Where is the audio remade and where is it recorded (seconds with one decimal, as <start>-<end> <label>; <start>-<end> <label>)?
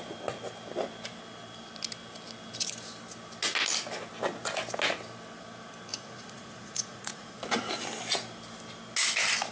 0.0-5.9 recorded; 5.9-7.4 remade; 7.4-9.5 recorded